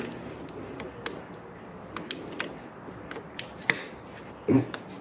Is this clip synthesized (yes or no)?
no